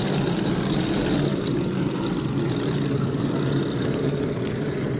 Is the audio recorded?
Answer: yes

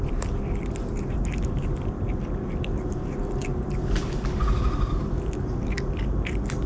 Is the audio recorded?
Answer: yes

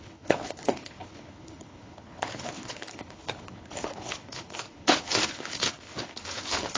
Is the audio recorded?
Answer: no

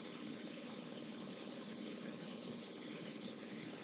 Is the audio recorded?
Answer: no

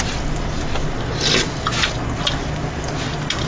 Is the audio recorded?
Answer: yes